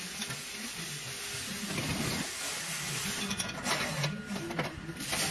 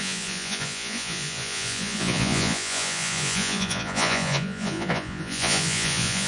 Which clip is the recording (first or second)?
first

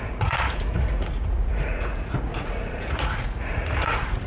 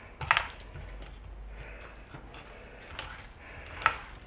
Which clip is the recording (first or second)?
second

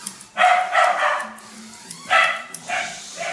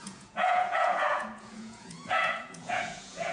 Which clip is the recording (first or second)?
first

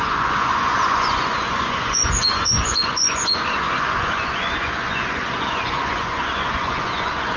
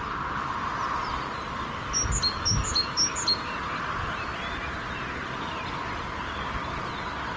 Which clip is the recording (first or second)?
second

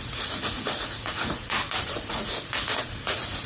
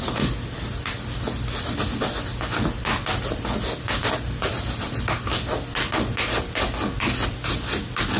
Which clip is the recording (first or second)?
second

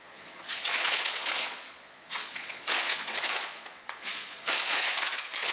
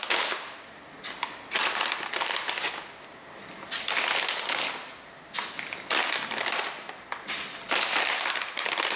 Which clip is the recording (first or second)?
second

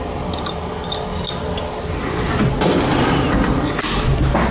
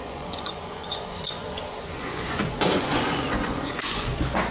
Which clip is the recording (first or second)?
first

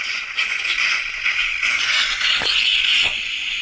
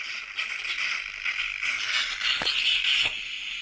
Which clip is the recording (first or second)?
second